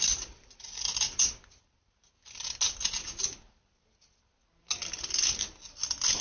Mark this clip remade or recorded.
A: recorded